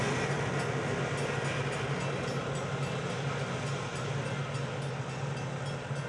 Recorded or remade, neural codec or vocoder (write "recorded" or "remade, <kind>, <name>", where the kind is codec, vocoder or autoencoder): recorded